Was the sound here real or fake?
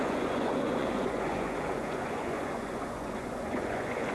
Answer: fake